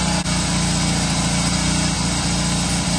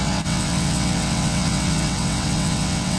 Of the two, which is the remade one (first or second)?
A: second